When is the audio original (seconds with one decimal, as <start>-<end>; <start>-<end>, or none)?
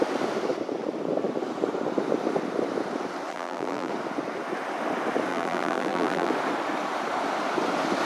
0.0-3.3; 3.9-5.3; 6.3-8.1